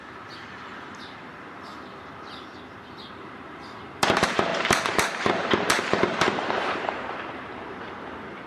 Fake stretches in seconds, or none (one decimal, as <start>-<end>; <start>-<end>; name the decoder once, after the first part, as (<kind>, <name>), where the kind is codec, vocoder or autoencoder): 0.0-1.7 (vocoder, BigVGAN v2); 3.1-8.5